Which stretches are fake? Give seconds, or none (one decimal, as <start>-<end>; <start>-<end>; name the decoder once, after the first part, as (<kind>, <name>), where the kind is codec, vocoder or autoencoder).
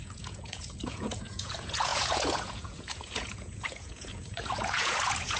0.0-5.4 (vocoder, Vocos)